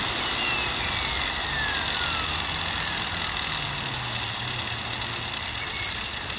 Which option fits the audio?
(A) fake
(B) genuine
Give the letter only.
B